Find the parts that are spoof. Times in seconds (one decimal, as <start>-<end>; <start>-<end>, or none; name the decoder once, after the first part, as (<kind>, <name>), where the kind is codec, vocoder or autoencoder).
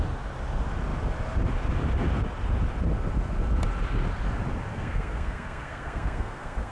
4.7-6.7 (codec, SNAC)